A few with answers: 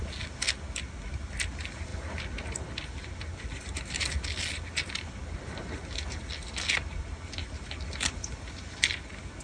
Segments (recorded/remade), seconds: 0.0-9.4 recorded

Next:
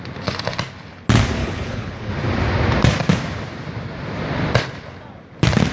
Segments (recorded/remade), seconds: 0.0-1.4 recorded; 1.4-2.1 remade; 2.1-5.7 recorded

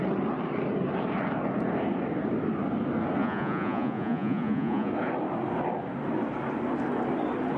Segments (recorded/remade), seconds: 0.0-3.2 recorded; 3.2-4.9 remade; 4.9-7.6 recorded